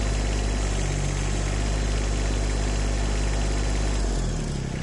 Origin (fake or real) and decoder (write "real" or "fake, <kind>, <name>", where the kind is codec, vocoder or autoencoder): real